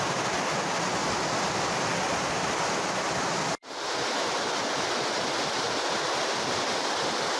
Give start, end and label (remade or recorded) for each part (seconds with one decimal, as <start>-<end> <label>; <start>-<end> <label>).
0.0-7.4 recorded